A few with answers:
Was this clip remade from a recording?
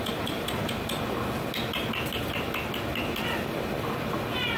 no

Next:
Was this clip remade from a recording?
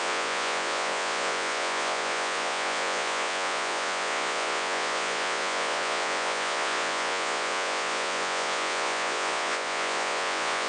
yes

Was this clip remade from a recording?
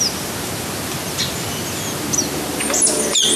no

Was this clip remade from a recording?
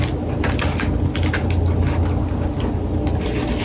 no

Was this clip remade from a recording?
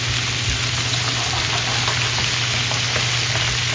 no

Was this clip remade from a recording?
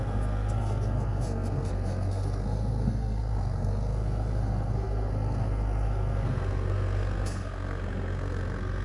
yes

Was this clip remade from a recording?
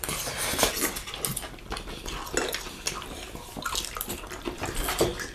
no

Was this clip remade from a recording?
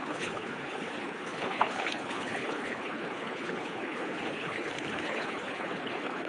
yes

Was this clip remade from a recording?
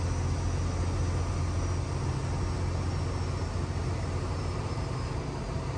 no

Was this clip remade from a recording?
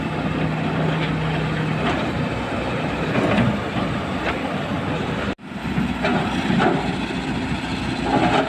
no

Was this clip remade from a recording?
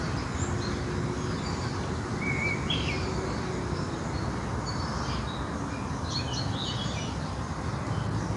no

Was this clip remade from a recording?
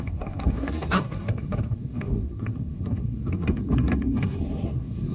yes